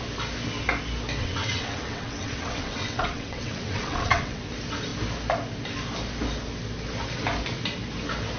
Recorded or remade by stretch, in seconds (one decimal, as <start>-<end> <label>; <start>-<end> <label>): 0.0-1.2 recorded; 1.2-4.4 remade; 4.4-8.4 recorded